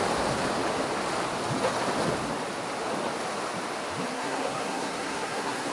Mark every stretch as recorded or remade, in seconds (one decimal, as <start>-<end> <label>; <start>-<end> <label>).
0.0-4.1 recorded; 4.1-5.7 remade